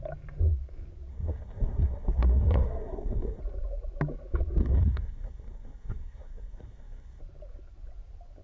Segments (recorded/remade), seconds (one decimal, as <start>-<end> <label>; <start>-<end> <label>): 0.0-1.1 recorded; 1.1-3.4 remade; 3.4-4.6 recorded; 4.6-7.2 remade; 7.2-8.4 recorded

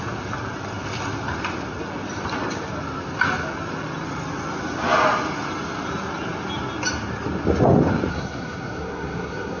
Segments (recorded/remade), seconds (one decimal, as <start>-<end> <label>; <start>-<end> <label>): 0.0-8.1 recorded; 8.1-9.6 remade